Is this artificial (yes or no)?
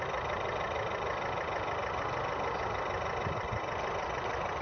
no